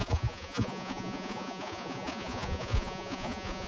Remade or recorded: remade